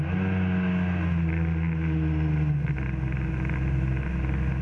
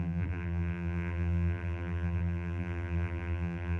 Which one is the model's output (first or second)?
second